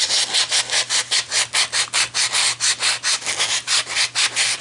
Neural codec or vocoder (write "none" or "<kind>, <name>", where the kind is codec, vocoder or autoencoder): none